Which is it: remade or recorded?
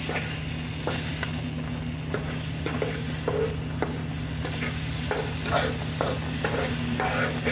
recorded